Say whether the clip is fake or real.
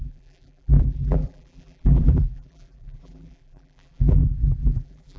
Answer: fake